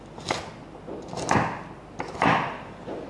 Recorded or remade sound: recorded